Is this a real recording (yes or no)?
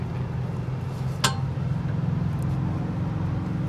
yes